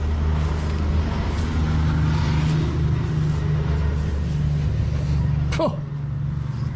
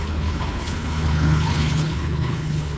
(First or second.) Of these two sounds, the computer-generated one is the second